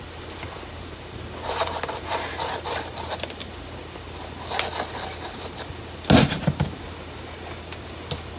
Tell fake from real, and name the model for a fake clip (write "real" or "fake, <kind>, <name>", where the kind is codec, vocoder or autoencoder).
real